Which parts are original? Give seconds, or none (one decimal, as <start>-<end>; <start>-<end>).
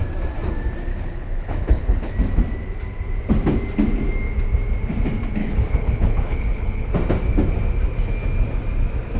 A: 0.0-0.9; 2.1-5.4; 6.9-9.2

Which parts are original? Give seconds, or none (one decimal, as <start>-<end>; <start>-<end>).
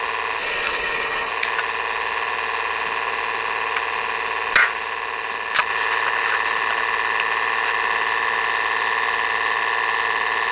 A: 0.0-0.4; 1.3-10.5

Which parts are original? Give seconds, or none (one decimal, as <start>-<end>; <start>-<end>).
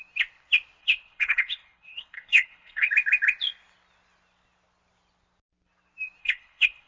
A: 0.0-0.8; 2.9-6.2